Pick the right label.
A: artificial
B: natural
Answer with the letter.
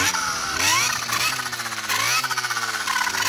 B